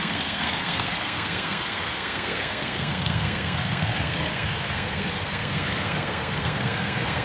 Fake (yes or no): yes